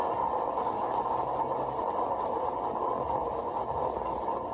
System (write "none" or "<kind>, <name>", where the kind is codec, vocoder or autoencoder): none